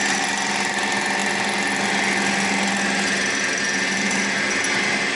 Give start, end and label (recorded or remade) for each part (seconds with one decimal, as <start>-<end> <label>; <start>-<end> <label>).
0.0-5.1 recorded